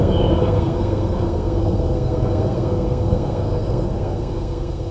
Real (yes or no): no